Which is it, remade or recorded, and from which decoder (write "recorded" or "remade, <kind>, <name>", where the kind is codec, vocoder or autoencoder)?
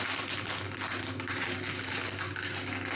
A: recorded